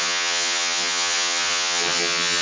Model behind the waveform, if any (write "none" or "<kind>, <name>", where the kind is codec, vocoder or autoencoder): vocoder, HiFi-GAN